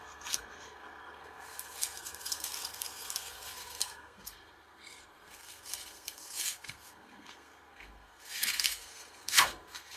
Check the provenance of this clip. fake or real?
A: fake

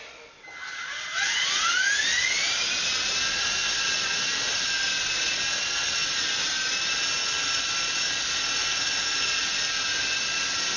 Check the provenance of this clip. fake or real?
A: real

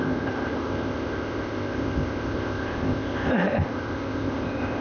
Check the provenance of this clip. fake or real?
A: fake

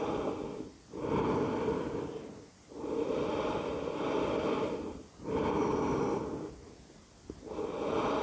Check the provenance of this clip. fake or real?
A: real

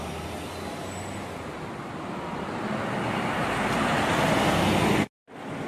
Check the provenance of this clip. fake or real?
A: real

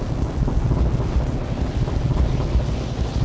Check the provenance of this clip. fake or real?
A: real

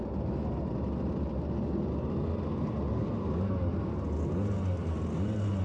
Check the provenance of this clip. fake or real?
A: real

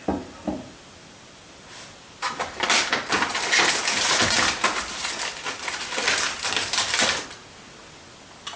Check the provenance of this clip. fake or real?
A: real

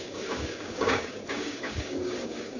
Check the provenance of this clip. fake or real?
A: fake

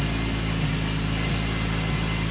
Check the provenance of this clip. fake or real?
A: real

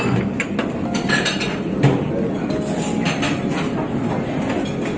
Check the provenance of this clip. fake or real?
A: real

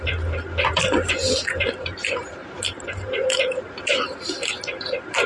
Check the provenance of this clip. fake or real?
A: fake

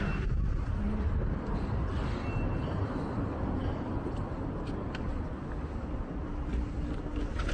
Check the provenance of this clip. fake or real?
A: real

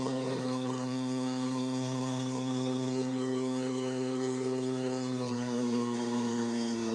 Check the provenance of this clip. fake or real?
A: fake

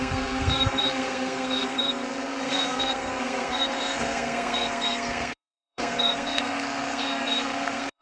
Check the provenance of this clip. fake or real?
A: fake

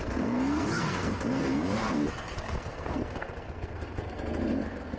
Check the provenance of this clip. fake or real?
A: fake